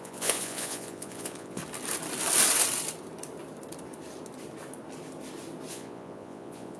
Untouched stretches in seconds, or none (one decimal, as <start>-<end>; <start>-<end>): 1.6-5.7

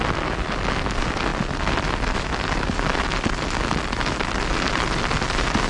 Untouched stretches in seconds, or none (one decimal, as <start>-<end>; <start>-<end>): 0.0-5.7